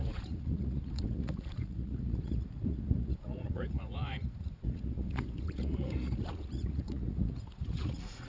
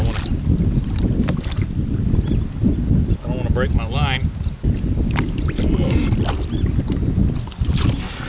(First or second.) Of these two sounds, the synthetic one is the first